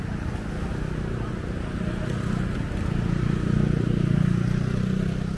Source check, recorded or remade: recorded